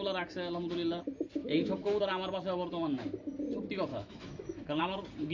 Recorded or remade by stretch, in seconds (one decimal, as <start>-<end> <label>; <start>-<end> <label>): 0.0-1.4 recorded; 1.4-2.0 remade; 2.0-3.9 recorded; 3.9-4.8 remade; 4.8-5.3 recorded